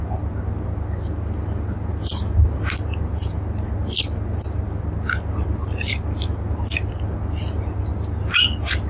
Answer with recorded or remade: recorded